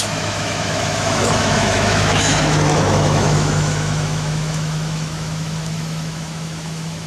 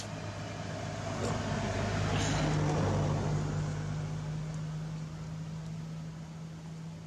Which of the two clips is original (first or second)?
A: second